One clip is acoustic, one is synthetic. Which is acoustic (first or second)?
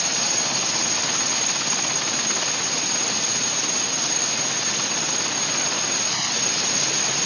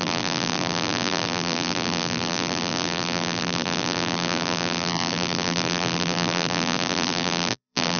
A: first